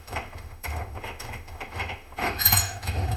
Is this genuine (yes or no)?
no